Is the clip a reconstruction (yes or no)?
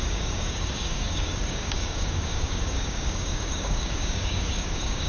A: yes